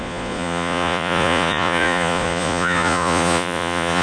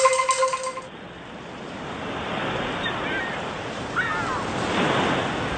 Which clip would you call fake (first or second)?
first